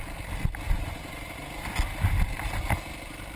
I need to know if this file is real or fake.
real